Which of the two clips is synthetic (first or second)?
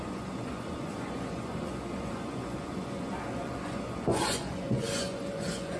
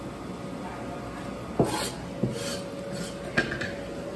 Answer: first